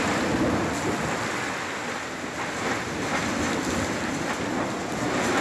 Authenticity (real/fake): real